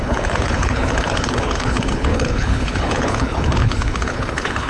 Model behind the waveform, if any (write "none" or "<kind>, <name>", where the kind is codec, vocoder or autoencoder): codec, HILCodec